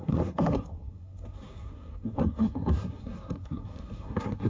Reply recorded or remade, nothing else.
remade